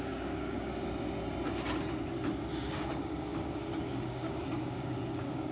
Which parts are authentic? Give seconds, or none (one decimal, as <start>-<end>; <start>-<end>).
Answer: 0.7-2.6